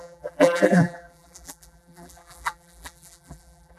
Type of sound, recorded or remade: remade